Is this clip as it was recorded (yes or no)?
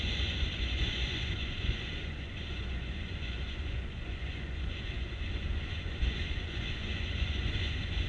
no